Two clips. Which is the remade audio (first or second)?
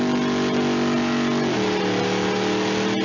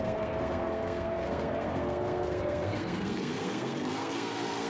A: second